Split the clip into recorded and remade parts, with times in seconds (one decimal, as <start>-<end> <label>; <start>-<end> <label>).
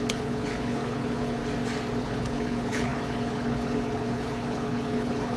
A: 0.0-1.4 remade; 1.4-2.0 recorded; 2.0-5.4 remade